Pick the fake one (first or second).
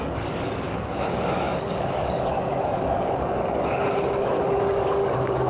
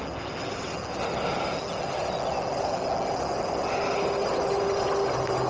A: first